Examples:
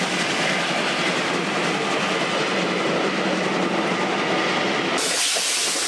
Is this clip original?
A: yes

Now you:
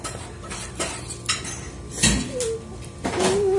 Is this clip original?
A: yes